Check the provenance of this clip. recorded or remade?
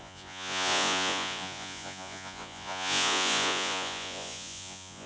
remade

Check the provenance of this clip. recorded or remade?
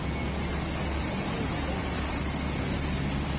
recorded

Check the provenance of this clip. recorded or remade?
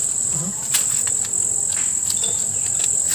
recorded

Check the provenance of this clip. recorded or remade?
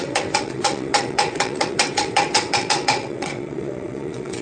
remade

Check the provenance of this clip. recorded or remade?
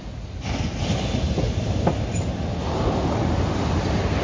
recorded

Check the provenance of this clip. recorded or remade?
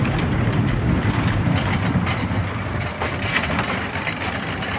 recorded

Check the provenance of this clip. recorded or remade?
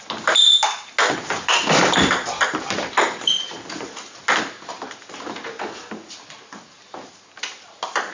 recorded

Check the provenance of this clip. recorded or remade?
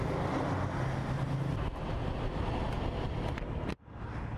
recorded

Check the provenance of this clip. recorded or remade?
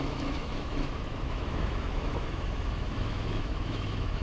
remade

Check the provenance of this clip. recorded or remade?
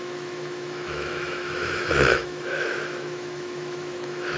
remade